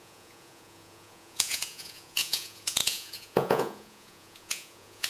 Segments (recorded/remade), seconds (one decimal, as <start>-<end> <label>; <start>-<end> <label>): 0.0-5.1 remade